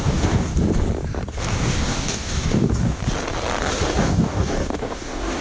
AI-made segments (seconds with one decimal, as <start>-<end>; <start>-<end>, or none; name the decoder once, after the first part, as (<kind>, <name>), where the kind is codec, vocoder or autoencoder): 0.0-0.5 (codec, DAC); 1.4-3.0; 4.0-5.4